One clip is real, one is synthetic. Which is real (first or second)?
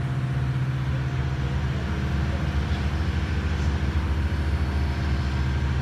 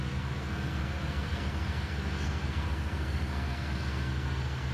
first